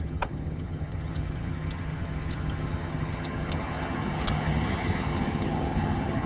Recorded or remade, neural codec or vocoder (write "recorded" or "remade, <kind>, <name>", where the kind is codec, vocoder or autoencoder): remade, vocoder, HiFi-GAN